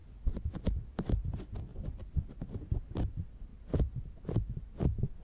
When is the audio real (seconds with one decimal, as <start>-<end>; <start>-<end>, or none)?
0.0-5.2